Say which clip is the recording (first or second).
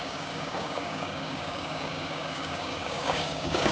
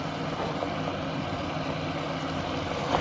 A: second